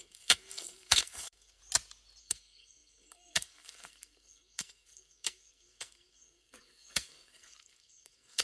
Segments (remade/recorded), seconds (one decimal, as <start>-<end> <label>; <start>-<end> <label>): 0.0-1.6 remade; 1.6-2.2 recorded; 2.2-8.4 remade